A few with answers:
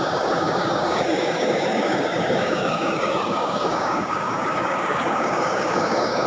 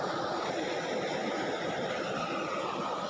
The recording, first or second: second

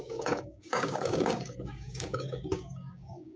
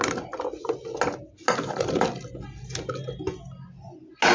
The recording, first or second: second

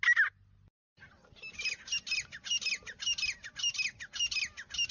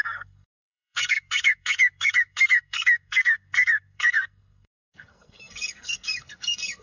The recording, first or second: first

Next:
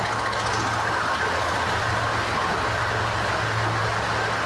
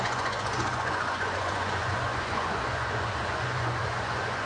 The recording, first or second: first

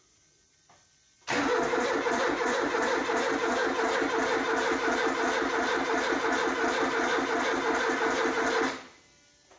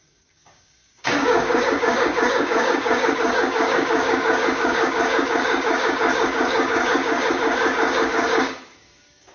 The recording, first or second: first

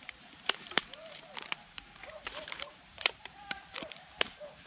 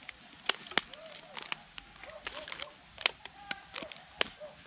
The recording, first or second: second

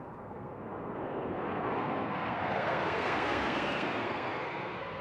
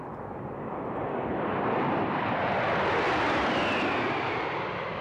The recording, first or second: second